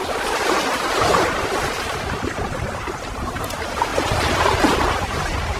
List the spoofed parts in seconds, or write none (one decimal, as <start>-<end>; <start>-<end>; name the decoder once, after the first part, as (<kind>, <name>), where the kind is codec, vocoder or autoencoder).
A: 0.0-3.9 (vocoder, BigVGAN v2); 4.9-5.6